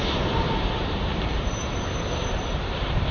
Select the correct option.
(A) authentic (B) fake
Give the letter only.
B